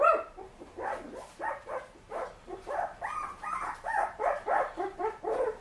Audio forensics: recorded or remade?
remade